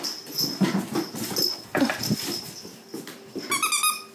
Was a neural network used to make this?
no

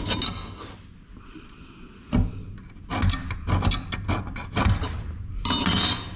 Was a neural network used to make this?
no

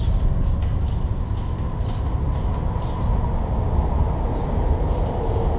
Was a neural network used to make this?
no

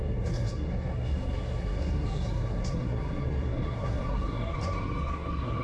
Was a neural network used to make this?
yes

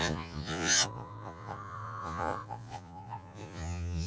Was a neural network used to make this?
yes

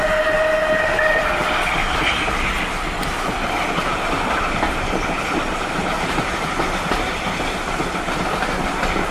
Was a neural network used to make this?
no